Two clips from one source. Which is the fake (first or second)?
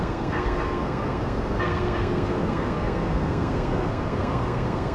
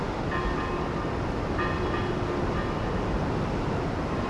first